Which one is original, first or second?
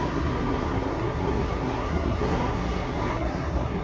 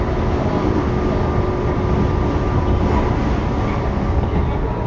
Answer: second